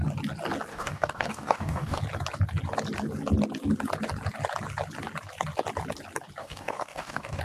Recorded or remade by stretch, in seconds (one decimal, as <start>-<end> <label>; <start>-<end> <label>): 0.0-0.7 recorded; 0.7-2.0 remade; 2.0-6.4 recorded; 6.4-7.4 remade